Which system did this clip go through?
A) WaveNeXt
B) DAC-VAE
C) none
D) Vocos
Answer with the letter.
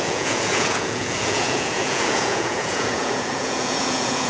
D